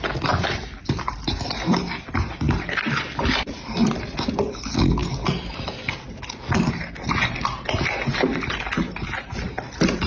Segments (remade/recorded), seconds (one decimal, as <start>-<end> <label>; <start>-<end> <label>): 0.0-10.1 recorded